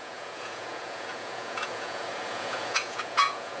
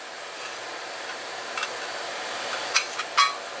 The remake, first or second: first